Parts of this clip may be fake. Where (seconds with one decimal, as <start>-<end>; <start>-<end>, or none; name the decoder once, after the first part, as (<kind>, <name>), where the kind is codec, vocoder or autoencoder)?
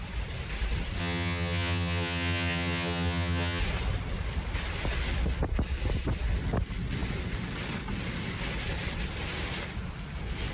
1.0-3.6 (vocoder, HiFi-GAN)